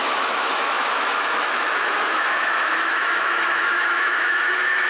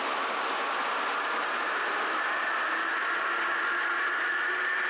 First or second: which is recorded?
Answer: second